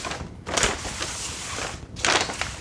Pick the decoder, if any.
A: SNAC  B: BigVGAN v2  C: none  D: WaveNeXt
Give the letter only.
C